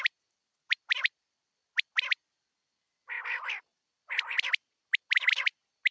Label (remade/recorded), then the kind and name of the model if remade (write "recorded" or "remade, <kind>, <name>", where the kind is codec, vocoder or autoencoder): recorded